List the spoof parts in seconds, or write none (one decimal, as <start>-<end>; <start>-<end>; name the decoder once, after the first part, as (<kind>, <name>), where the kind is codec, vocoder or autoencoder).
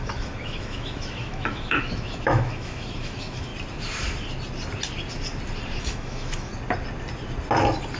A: 0.0-3.5 (autoencoder, DAC-VAE); 5.8-6.5